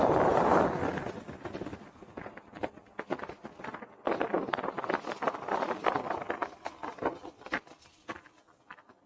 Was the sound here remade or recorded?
recorded